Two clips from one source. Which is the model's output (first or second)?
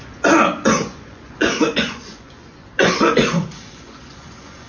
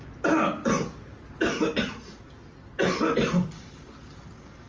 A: first